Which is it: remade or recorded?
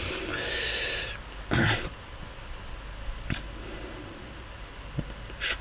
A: recorded